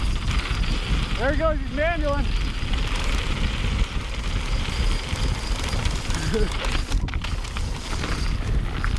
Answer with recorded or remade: recorded